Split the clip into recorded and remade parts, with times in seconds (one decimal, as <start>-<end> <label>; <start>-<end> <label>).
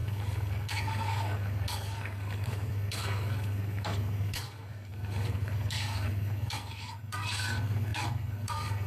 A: 0.0-8.9 remade